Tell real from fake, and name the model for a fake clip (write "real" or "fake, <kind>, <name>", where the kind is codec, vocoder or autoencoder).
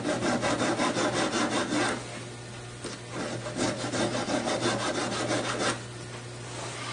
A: real